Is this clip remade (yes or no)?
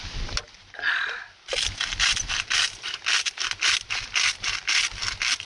no